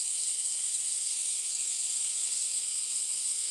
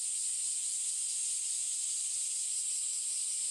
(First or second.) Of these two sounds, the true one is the second